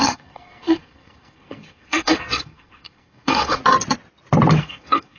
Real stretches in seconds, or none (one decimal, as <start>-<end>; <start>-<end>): 3.6-4.6